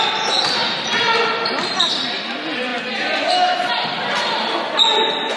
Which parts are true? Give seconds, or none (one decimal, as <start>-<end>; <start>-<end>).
0.0-5.4